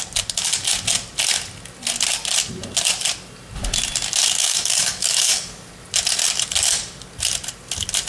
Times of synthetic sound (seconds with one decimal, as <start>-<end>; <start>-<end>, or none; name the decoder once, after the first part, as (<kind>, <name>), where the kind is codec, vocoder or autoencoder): 4.4-5.7 (codec, DAC)